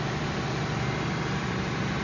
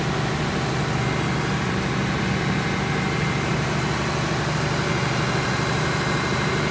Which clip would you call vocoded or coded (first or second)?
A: first